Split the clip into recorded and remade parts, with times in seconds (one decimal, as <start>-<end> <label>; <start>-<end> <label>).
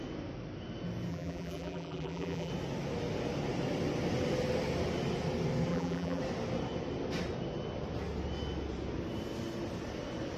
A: 0.0-1.1 recorded; 1.1-2.5 remade; 2.5-5.7 recorded; 5.7-6.2 remade; 6.2-10.4 recorded